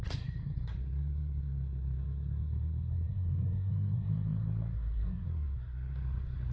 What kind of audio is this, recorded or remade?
remade